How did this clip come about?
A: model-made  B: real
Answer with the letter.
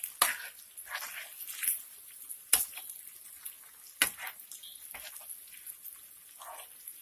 B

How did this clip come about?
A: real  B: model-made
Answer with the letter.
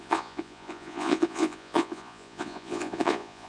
B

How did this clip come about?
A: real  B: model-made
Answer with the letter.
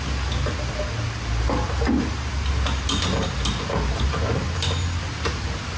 A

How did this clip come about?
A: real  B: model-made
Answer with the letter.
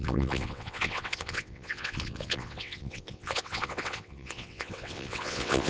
B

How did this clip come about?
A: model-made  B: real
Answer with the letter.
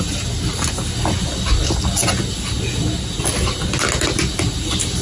B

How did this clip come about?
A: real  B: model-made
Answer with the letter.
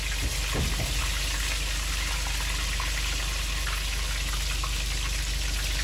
A